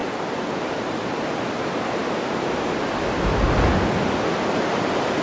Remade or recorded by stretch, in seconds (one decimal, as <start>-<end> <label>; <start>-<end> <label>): 0.0-5.2 recorded